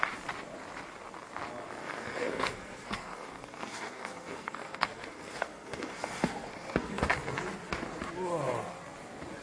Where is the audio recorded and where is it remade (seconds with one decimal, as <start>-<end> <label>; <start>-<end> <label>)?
0.0-1.8 recorded; 1.8-7.0 remade; 7.0-9.4 recorded